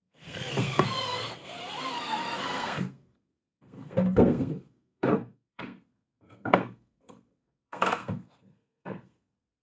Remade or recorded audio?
remade